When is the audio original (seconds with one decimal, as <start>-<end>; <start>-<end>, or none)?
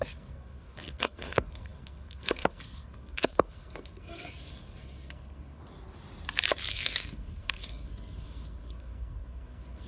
5.6-6.7